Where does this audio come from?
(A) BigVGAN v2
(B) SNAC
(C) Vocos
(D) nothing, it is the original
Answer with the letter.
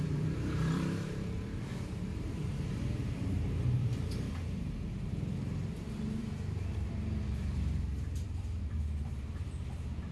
A